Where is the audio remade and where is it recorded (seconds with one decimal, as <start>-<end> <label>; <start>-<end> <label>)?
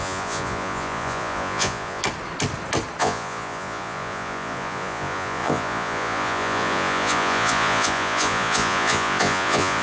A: 0.0-2.0 remade; 2.0-3.0 recorded; 3.0-9.8 remade